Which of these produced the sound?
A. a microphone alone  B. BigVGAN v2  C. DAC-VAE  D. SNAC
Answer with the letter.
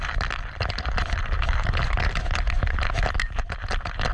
A